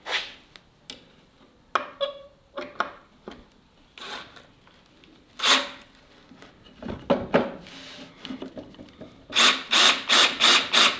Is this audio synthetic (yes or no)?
no